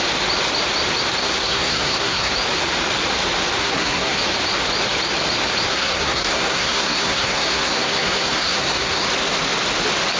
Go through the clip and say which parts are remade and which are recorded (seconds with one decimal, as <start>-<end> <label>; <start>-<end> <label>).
0.0-1.2 recorded; 1.2-2.3 remade; 2.3-3.6 recorded; 3.6-4.2 remade; 4.2-5.7 recorded; 5.7-9.0 remade; 9.0-10.2 recorded